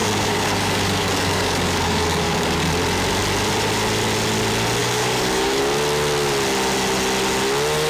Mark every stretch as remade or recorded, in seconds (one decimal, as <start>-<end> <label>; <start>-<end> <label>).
0.0-2.7 remade; 2.7-4.8 recorded; 4.8-5.6 remade; 5.6-7.9 recorded

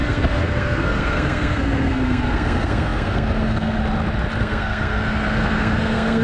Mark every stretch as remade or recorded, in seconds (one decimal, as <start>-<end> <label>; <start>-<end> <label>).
0.0-3.8 remade; 3.8-4.4 recorded; 4.4-6.2 remade

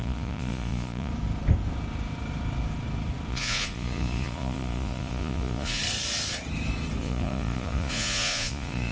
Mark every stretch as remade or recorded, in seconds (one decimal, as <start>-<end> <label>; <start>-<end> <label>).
0.0-1.1 remade; 1.1-3.3 recorded; 3.3-5.8 remade; 5.8-7.0 recorded; 7.0-8.9 remade